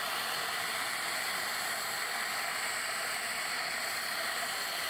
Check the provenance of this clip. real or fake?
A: real